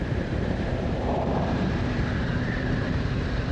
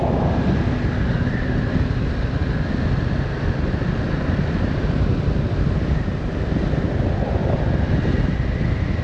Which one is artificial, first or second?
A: first